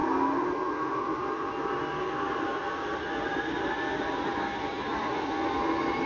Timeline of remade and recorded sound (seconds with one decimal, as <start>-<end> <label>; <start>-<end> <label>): 0.0-6.1 recorded

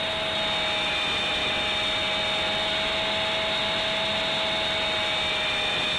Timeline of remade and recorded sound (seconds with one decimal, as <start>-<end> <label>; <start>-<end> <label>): 0.0-6.0 recorded

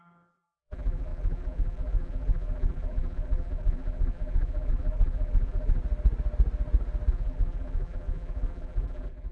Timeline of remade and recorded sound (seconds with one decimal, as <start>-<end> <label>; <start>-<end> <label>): 0.0-5.8 remade; 5.8-7.1 recorded; 7.1-9.3 remade

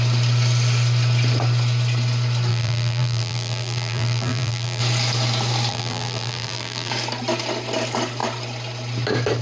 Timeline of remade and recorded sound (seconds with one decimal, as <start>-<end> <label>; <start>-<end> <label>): 0.0-2.5 recorded; 2.5-4.8 remade; 4.8-5.7 recorded; 5.7-6.9 remade; 6.9-9.4 recorded

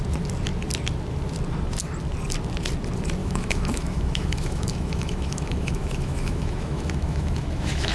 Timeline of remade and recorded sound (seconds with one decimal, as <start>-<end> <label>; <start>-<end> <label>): 0.0-3.2 recorded; 3.2-7.9 remade

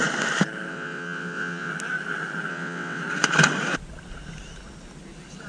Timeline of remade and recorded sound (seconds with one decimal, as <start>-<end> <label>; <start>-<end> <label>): 0.0-0.7 recorded; 0.7-1.7 remade; 1.7-2.5 recorded; 2.5-3.0 remade; 3.0-5.5 recorded

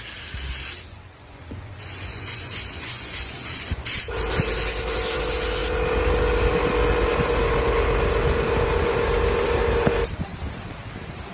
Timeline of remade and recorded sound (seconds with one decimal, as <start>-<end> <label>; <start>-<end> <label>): 0.0-0.9 recorded; 0.9-3.9 remade; 3.9-11.3 recorded